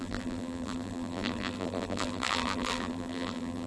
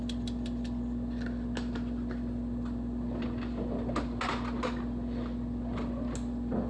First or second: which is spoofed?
first